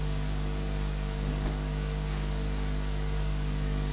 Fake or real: fake